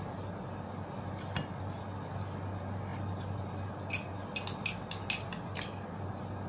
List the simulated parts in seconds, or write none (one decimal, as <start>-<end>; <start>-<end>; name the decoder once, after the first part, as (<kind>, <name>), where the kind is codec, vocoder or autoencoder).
none